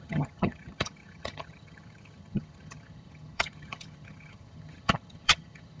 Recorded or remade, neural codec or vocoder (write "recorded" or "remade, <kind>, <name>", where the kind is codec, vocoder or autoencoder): remade, vocoder, HiFi-GAN